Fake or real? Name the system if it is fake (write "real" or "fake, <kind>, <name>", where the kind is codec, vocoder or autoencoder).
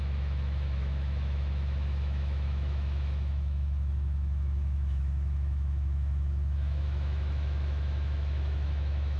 fake, autoencoder, DAC-VAE